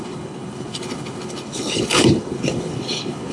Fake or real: fake